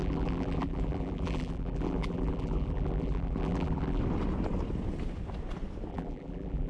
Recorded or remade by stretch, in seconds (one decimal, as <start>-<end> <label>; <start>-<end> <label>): 0.0-4.0 remade; 4.0-5.9 recorded; 5.9-6.7 remade